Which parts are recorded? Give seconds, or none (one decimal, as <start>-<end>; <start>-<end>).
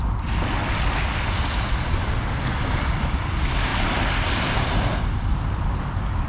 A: 0.0-6.3